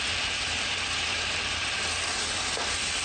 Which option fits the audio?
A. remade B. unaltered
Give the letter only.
B